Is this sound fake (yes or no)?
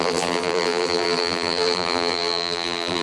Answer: yes